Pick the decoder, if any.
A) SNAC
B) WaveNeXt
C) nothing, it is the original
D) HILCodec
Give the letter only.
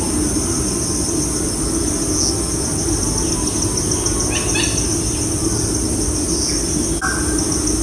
C